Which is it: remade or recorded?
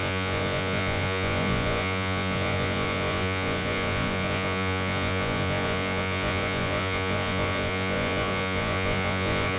remade